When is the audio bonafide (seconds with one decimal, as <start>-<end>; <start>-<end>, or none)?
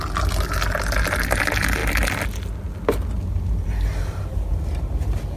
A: 0.0-5.4